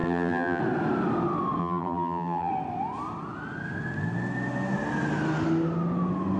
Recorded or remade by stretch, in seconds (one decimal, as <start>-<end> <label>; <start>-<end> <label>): 0.0-0.6 remade; 0.6-1.6 recorded; 1.6-2.5 remade; 2.5-6.4 recorded